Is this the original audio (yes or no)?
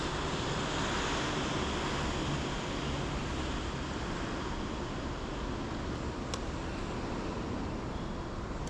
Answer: yes